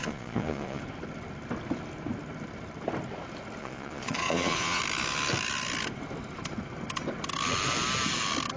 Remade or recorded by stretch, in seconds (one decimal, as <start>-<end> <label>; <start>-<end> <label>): 0.0-0.8 remade; 0.8-3.6 recorded; 3.6-4.8 remade; 4.8-8.6 recorded